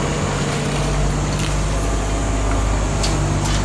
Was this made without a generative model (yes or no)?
yes